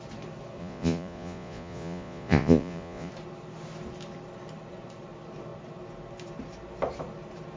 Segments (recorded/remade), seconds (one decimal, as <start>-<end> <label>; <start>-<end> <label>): 0.0-0.6 recorded; 0.6-3.1 remade; 3.1-7.6 recorded